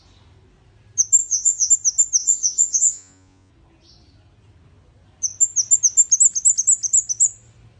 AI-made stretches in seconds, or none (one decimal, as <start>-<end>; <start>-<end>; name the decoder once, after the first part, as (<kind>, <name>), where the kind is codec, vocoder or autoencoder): 1.2-1.7 (vocoder, Vocos); 2.2-3.5

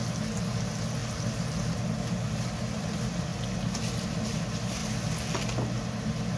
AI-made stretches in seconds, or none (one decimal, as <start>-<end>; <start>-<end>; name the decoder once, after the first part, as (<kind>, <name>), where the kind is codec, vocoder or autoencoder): none

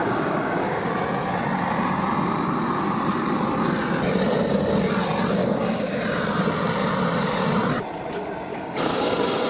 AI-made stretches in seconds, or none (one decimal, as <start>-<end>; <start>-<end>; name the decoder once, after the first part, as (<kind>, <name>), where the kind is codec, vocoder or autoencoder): 0.0-0.9 (codec, DAC); 5.4-6.0; 8.5-9.1

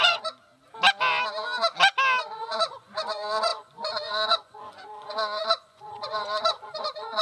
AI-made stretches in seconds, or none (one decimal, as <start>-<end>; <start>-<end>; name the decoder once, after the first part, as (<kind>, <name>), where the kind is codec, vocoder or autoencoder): 0.0-0.5 (vocoder, Vocos); 2.2-7.2

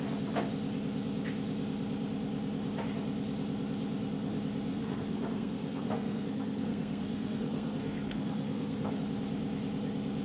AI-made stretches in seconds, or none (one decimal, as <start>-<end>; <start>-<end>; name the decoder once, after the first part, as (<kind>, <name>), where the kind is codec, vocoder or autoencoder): 4.7-9.0 (codec, SNAC)

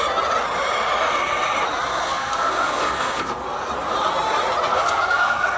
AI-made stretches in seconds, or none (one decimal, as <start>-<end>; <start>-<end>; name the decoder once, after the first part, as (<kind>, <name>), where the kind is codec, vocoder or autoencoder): 1.9-3.4 (codec, SNAC); 4.7-5.6

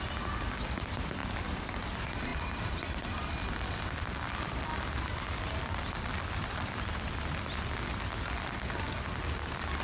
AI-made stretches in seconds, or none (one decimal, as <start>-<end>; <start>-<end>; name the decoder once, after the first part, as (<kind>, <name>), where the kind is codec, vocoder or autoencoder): 0.0-1.2 (vocoder, BigVGAN v2); 1.8-4.7